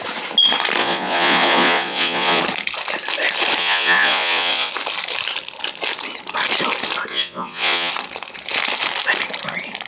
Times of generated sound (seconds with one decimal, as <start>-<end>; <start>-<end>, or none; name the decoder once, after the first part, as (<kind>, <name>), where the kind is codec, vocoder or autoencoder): 0.8-2.4 (vocoder, Vocos); 3.6-4.7; 7.1-7.9